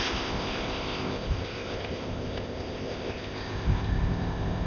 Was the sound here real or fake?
fake